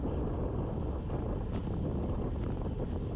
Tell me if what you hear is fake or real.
real